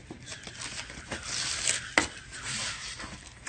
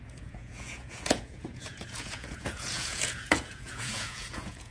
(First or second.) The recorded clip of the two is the first